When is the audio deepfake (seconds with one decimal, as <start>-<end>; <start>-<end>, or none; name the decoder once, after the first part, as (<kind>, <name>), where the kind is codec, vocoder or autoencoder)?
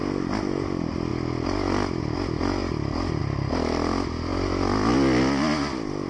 none